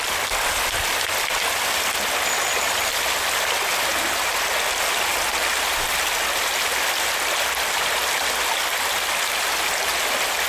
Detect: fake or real real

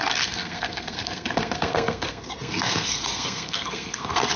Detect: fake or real fake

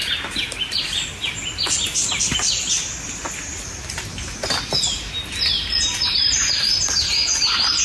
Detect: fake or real real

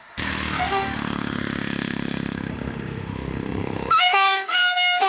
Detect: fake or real fake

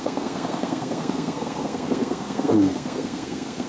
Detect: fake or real fake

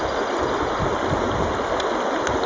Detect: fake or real real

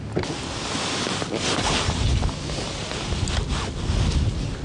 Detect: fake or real real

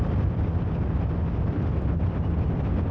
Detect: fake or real real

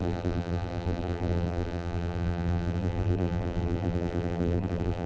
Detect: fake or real fake